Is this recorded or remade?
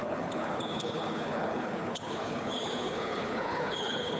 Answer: remade